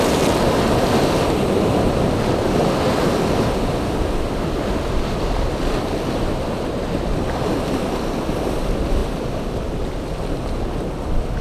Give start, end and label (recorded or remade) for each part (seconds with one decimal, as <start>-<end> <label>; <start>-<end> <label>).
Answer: 0.0-11.4 recorded